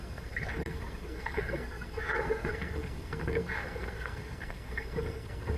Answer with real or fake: fake